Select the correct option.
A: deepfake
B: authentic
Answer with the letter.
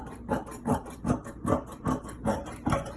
B